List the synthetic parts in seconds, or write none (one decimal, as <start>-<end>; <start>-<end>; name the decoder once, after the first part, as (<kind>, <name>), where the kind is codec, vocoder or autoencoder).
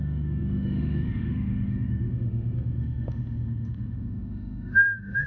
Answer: 0.0-5.3 (autoencoder, DAC-VAE)